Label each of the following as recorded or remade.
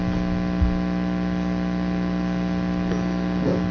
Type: recorded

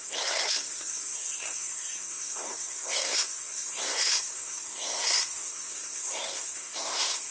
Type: remade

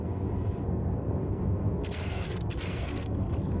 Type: remade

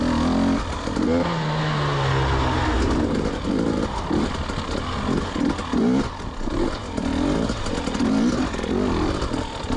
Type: recorded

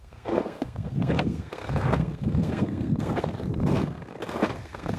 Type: remade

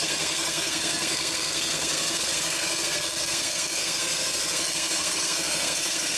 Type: remade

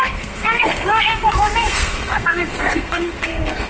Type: remade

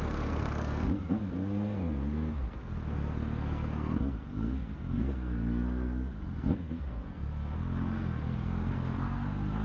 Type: remade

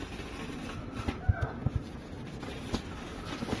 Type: recorded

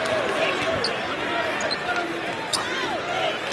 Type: recorded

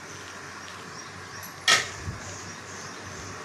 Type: recorded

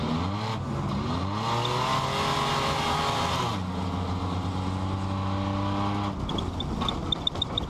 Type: recorded